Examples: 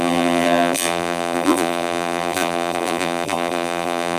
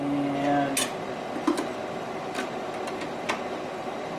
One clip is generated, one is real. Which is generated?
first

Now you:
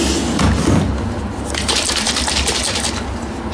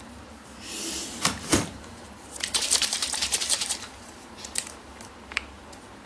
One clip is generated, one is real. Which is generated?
second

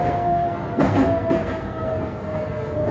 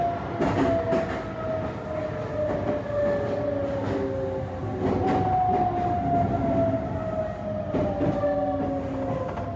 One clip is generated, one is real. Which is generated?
first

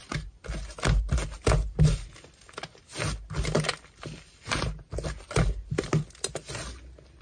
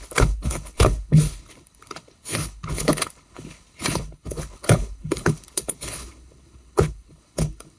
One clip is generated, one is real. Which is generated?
second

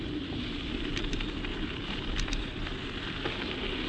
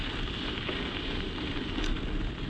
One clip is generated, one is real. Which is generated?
first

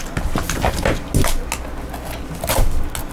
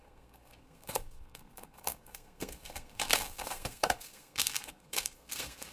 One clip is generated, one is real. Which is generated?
second